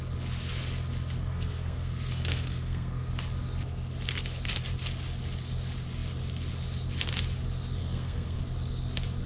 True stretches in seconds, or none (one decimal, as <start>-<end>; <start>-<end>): 0.0-1.2; 3.1-7.8; 8.4-9.3